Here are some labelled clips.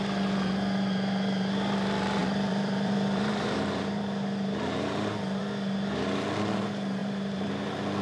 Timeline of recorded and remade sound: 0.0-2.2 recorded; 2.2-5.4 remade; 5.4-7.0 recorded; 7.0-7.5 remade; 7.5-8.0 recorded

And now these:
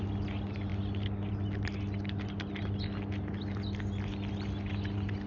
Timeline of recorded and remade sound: 0.0-5.3 recorded

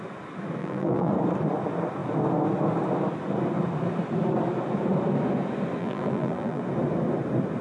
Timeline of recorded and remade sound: 0.0-0.6 recorded; 0.6-1.1 remade; 1.1-5.8 recorded; 5.8-6.6 remade; 6.6-7.6 recorded

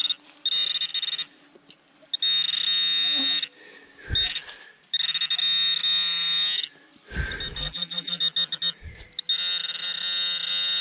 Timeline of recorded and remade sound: 0.0-7.6 recorded; 7.6-8.2 remade; 8.2-10.8 recorded

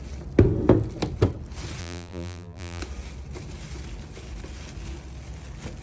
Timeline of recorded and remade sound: 0.0-1.8 recorded; 1.8-2.8 remade; 2.8-5.8 recorded

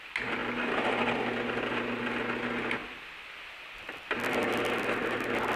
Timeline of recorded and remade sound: 0.0-2.8 recorded; 2.8-4.6 remade; 4.6-5.6 recorded

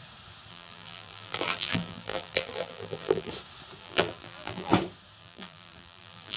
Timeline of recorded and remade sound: 0.0-0.5 recorded; 0.5-3.3 remade; 3.3-3.8 recorded; 3.8-4.7 remade; 4.7-5.2 recorded; 5.2-6.4 remade